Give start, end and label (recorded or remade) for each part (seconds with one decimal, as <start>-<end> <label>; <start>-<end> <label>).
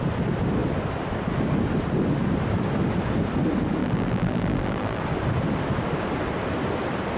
0.0-3.8 recorded; 3.8-5.0 remade; 5.0-7.2 recorded